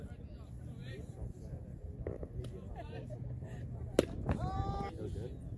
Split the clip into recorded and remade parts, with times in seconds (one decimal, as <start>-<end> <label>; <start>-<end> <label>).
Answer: 0.0-5.6 recorded